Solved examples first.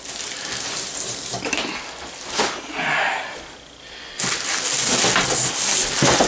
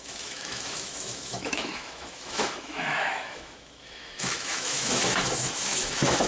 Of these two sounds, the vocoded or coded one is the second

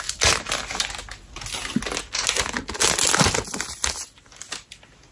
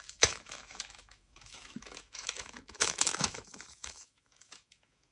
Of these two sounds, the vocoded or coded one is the second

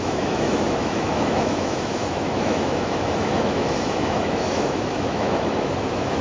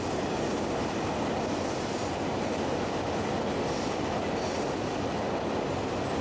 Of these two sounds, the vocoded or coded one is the first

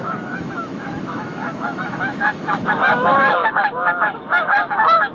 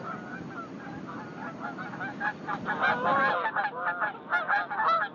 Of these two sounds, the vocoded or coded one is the first